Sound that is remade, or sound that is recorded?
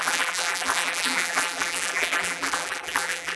remade